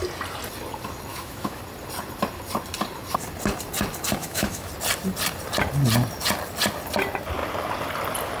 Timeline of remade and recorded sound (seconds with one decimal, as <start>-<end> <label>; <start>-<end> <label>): 0.0-1.1 recorded; 1.1-1.6 remade; 1.6-4.2 recorded; 4.2-4.7 remade; 4.7-8.4 recorded